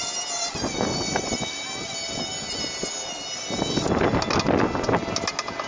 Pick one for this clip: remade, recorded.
recorded